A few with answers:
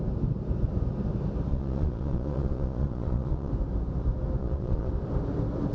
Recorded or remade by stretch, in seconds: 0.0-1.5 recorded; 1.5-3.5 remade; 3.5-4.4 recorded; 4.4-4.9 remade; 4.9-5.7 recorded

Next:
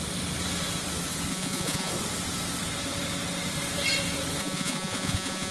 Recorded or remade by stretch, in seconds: 0.0-1.3 recorded; 1.3-1.9 remade; 1.9-4.4 recorded; 4.4-5.5 remade